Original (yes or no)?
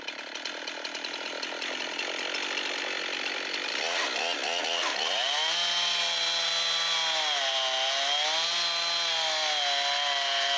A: yes